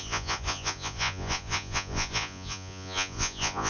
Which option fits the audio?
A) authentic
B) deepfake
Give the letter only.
B